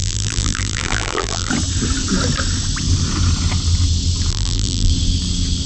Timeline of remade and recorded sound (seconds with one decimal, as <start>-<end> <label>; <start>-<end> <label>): 0.0-1.5 remade; 1.5-4.3 recorded; 4.3-4.9 remade; 4.9-5.7 recorded